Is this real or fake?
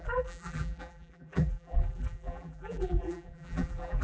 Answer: fake